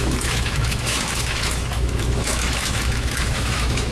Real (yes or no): no